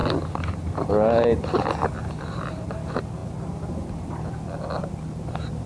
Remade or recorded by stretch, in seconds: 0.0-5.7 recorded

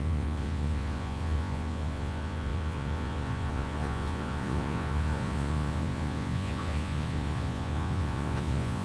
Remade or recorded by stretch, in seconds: 0.0-8.8 remade

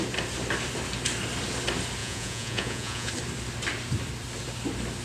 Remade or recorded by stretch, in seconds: 0.0-2.0 recorded; 2.0-3.1 remade; 3.1-5.0 recorded